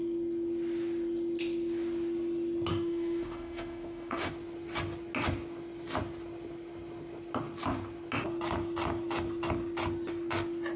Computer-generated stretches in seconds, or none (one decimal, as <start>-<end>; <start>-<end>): 2.7-4.3